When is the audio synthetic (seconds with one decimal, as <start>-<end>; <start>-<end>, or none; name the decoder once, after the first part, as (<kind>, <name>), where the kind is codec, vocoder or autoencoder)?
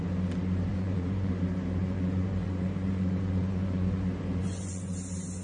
0.7-1.3 (vocoder, Vocos); 1.8-4.9